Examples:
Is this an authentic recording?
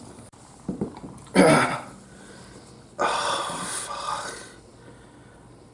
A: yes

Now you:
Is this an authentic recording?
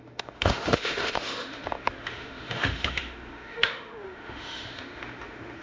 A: no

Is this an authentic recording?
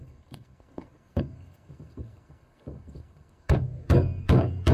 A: no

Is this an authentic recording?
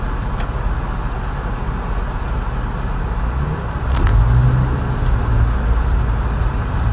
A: yes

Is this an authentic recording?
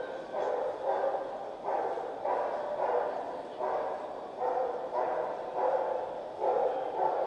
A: yes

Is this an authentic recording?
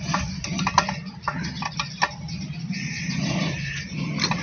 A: yes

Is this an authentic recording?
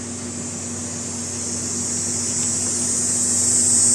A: yes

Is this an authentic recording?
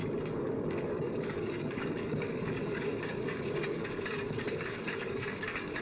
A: no